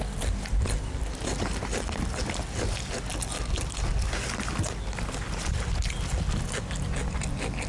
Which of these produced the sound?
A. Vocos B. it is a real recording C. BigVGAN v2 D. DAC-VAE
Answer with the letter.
B